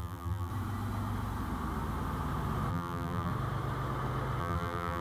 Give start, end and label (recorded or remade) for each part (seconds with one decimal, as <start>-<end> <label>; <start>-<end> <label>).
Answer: 0.0-0.5 remade; 0.5-2.7 recorded; 2.7-3.3 remade; 3.3-4.4 recorded; 4.4-5.0 remade